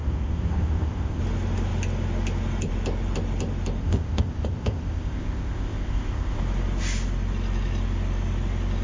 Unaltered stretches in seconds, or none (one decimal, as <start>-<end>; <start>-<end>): 1.2-3.8; 6.4-8.8

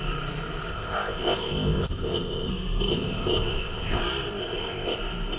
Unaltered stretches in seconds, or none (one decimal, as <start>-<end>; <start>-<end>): 0.0-0.7; 2.5-2.9; 4.0-4.4; 5.0-5.4

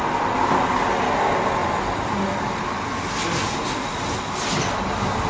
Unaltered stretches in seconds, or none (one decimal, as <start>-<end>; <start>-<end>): 0.0-5.3